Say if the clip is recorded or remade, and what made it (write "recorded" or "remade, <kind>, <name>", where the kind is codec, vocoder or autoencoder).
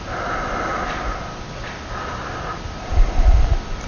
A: recorded